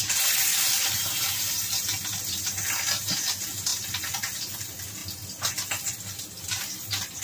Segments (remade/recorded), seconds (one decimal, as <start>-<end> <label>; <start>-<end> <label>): 0.0-0.5 recorded; 0.5-2.1 remade; 2.1-7.2 recorded